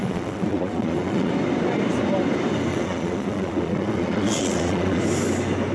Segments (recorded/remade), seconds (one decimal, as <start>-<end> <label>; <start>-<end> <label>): 0.0-1.3 remade; 1.3-2.7 recorded; 2.7-5.0 remade; 5.0-5.7 recorded